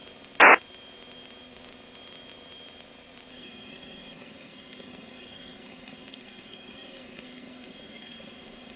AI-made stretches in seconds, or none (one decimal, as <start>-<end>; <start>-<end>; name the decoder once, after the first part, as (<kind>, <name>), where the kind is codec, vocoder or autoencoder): 3.3-8.8 (codec, SNAC)